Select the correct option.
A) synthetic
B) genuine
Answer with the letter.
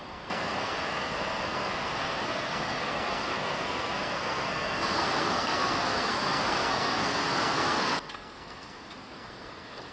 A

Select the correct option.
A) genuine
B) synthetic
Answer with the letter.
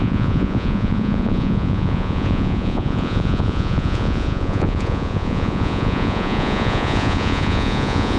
B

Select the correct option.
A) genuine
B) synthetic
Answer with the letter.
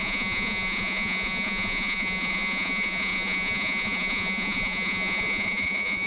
B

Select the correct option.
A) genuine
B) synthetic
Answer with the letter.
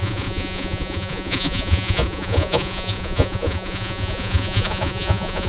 B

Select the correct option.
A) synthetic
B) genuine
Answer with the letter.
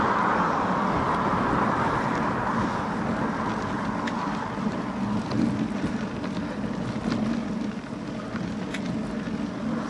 B